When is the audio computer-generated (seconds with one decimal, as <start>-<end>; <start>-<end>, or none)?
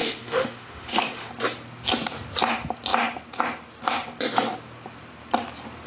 0.0-1.3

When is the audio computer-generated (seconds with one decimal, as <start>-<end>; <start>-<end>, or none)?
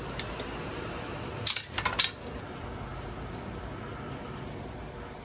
0.7-2.5; 2.9-3.5